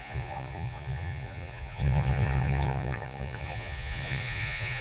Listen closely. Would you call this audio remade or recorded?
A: remade